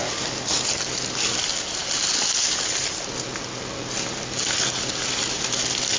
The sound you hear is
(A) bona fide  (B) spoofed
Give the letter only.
A